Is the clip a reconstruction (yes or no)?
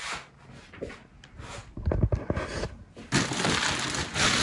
no